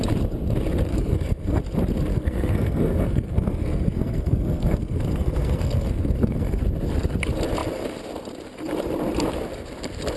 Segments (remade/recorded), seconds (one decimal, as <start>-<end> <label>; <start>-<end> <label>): 0.0-0.9 recorded; 0.9-1.6 remade; 1.6-2.1 recorded; 2.1-6.6 remade; 6.6-10.2 recorded